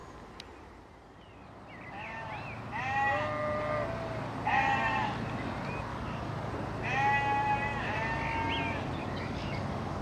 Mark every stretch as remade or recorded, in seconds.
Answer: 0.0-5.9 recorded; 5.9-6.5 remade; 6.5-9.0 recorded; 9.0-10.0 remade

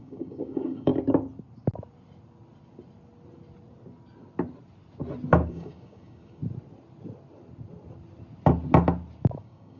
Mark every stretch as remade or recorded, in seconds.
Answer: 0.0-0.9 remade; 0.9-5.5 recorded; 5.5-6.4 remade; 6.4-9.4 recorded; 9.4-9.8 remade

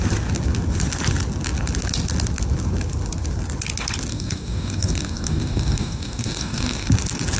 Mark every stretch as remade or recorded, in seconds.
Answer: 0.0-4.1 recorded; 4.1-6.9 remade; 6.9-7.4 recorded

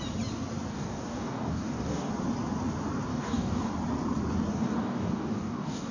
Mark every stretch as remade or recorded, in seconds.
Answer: 0.0-0.7 recorded; 0.7-2.1 remade; 2.1-3.1 recorded; 3.1-3.7 remade; 3.7-4.5 recorded; 4.5-5.9 remade

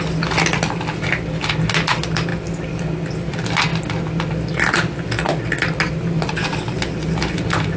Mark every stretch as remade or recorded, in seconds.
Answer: 0.0-7.8 recorded

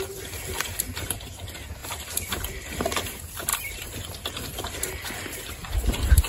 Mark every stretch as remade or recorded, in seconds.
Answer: 0.0-6.3 recorded